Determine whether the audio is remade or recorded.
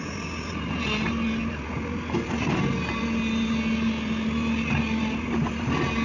recorded